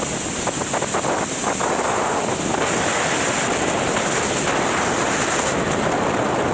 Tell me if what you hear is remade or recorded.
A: recorded